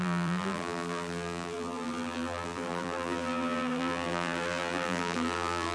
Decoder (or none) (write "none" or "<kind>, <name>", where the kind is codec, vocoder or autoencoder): vocoder, BigVGAN v2